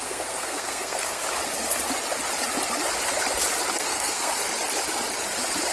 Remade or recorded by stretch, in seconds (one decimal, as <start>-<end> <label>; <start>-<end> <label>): 0.0-1.2 remade; 1.2-3.8 recorded; 3.8-4.3 remade; 4.3-5.7 recorded